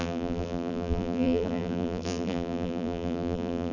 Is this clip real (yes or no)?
no